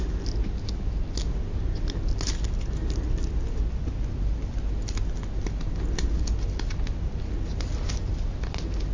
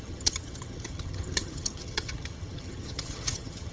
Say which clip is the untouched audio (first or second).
first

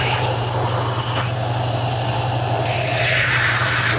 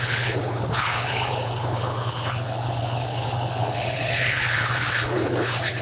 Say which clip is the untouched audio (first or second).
first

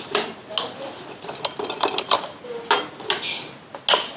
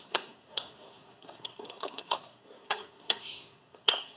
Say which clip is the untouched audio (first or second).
first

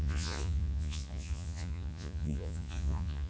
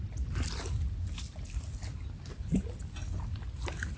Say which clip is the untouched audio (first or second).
second